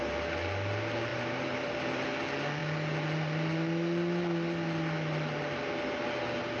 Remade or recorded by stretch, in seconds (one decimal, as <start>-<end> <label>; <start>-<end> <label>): 0.0-1.1 recorded; 1.1-1.7 remade; 1.7-6.6 recorded